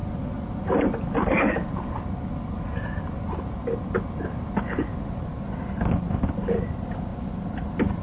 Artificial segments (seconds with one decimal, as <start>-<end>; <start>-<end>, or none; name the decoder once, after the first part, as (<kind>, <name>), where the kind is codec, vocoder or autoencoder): none